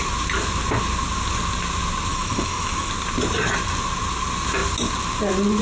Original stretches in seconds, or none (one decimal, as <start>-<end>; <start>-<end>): 0.0-2.1; 2.9-5.6